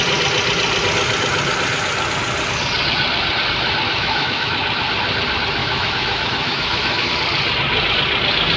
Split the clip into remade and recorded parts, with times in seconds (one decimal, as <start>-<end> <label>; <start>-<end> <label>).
0.0-3.9 recorded; 3.9-4.5 remade; 4.5-5.6 recorded; 5.6-7.1 remade; 7.1-8.6 recorded